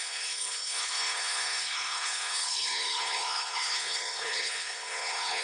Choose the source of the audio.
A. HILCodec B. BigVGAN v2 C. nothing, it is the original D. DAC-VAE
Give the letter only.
A